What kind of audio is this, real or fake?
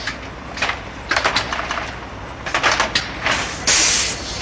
real